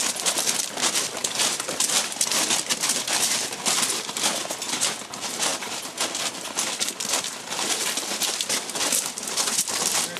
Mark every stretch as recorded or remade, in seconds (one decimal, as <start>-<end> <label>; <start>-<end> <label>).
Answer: 0.0-1.2 recorded; 1.2-4.3 remade; 4.3-5.5 recorded; 5.5-10.2 remade